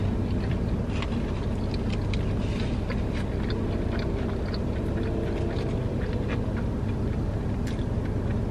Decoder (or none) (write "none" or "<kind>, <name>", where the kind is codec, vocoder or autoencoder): none